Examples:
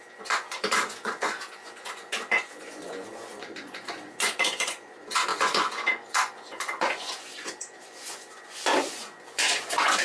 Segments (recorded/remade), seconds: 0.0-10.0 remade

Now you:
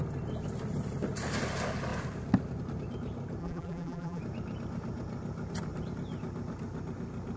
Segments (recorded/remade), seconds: 0.0-3.4 recorded; 3.4-4.2 remade; 4.2-7.4 recorded

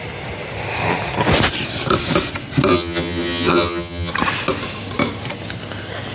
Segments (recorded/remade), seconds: 0.0-2.7 recorded; 2.7-4.1 remade; 4.1-6.1 recorded